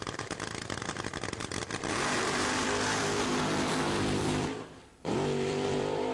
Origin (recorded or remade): remade